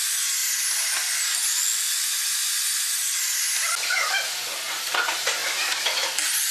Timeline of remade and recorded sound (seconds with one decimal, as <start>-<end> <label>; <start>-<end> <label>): 0.0-6.5 recorded